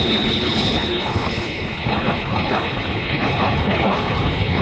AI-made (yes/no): yes